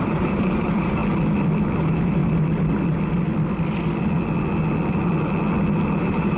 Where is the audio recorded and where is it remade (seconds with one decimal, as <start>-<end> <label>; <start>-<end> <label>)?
0.0-1.0 remade; 1.0-1.8 recorded; 1.8-2.2 remade; 2.2-6.0 recorded; 6.0-6.4 remade